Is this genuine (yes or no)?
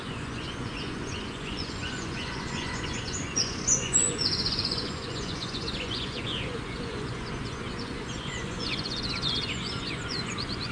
no